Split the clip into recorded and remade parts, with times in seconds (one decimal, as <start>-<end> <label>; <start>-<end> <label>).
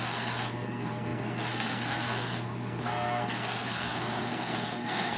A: 0.0-5.2 remade